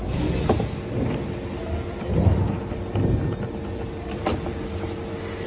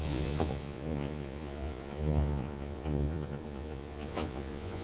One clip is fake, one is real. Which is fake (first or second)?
second